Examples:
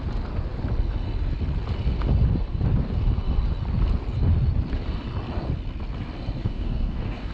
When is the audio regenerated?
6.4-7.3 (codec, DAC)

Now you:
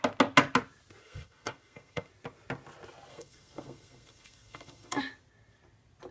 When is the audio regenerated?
1.0-2.1 (codec, SNAC); 3.1-5.0

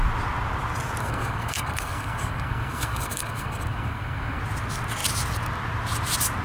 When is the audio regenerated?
1.0-4.4 (codec, SNAC)